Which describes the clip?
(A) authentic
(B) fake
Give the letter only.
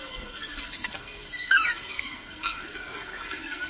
B